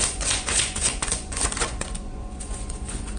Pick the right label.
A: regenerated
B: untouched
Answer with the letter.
A